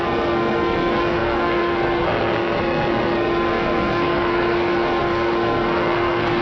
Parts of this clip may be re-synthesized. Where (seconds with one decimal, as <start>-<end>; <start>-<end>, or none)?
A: 0.0-6.4